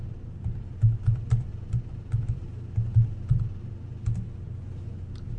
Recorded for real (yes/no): yes